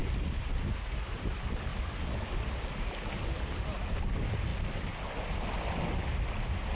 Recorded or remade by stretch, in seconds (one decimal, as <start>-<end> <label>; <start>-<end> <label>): 0.0-6.7 recorded